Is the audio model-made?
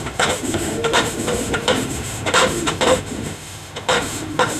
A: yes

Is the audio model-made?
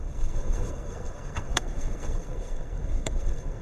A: yes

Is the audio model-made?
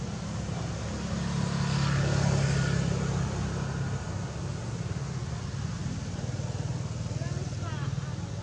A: no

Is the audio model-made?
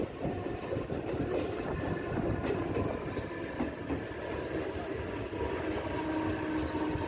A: no